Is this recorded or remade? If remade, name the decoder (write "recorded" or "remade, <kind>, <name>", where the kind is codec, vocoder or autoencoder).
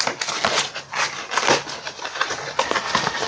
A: recorded